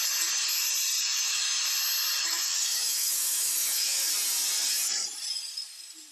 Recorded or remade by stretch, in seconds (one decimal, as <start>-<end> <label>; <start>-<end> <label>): 0.0-1.0 recorded; 1.0-1.6 remade; 1.6-2.2 recorded; 2.2-4.1 remade; 4.1-6.1 recorded